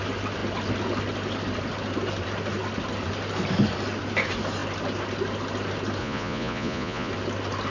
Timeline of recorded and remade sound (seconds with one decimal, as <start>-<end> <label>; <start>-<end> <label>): 0.0-6.0 recorded; 6.0-7.1 remade; 7.1-7.7 recorded